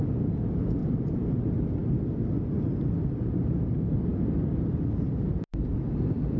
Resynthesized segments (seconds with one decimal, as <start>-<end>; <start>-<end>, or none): 0.8-1.3